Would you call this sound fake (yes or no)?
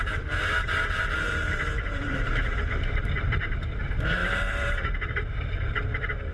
yes